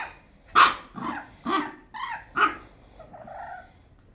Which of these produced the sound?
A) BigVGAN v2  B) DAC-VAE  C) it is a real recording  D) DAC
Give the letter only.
C